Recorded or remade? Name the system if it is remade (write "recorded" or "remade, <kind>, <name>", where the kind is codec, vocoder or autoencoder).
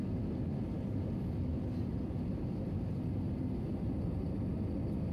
recorded